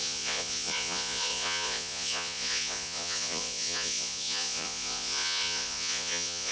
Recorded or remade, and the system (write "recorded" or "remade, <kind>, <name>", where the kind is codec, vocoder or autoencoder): remade, vocoder, Vocos